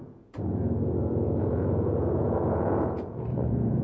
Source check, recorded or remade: remade